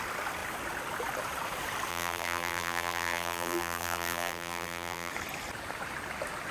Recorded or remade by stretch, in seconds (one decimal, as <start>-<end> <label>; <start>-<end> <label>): 0.0-1.9 recorded; 1.9-5.1 remade; 5.1-6.5 recorded